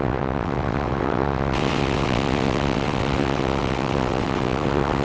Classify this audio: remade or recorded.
remade